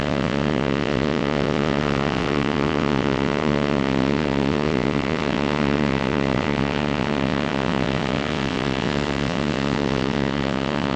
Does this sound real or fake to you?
fake